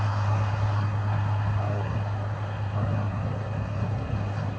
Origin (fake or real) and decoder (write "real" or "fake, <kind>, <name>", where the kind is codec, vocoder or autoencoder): fake, codec, SNAC